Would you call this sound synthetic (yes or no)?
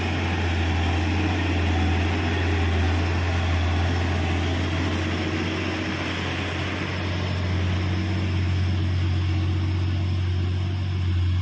no